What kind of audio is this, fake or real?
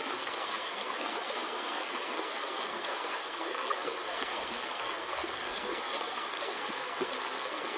fake